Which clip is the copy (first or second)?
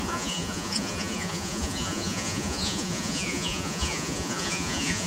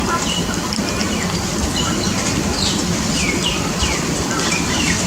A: first